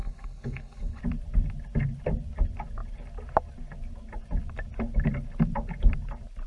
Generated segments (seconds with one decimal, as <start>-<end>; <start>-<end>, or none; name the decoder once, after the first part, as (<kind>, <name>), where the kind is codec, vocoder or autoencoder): 0.0-1.0 (codec, HILCodec)